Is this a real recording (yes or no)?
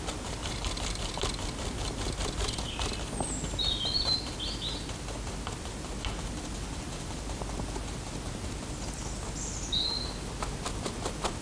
yes